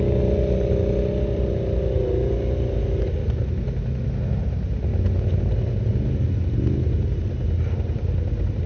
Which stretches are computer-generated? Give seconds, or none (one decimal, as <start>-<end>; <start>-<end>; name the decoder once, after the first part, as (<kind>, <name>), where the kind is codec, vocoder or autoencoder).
4.9-5.4 (autoencoder, DAC-VAE)